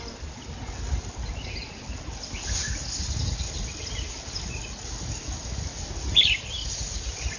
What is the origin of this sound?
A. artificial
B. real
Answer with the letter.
B